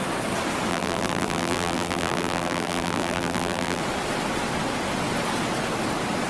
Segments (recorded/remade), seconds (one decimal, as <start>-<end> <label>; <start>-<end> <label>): 0.0-0.7 recorded; 0.7-3.8 remade; 3.8-6.3 recorded